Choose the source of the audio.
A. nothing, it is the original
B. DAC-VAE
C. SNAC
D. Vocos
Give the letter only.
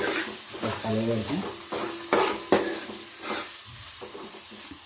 A